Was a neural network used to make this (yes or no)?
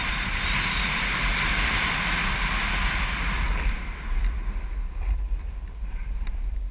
no